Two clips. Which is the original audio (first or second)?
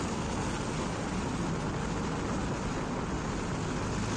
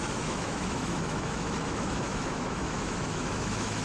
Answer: first